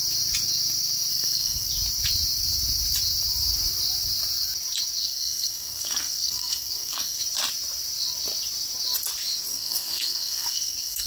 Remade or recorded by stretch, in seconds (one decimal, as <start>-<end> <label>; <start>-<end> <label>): 0.0-1.1 recorded; 1.1-1.7 remade; 1.7-5.0 recorded; 5.0-7.2 remade; 7.2-9.5 recorded; 9.5-11.1 remade